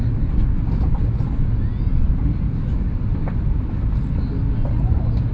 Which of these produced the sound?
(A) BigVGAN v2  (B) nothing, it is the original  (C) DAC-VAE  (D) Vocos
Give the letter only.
B